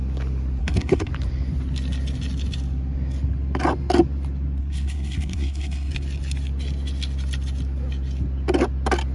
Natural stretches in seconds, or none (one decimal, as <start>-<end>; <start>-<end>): 0.0-0.6; 1.1-4.6; 5.9-9.1